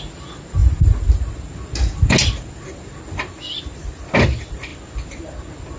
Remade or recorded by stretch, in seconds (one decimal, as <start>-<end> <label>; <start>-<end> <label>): 0.0-5.8 recorded